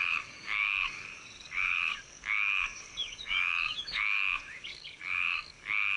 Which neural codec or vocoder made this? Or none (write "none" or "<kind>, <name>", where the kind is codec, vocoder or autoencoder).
codec, DAC